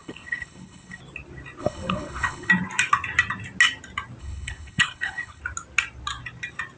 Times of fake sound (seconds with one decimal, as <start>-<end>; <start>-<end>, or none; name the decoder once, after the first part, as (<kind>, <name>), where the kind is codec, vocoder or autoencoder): 0.0-1.0 (codec, HILCodec); 1.6-2.5; 4.2-5.4